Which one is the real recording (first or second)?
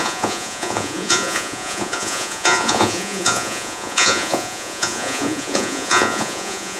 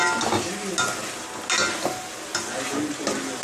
second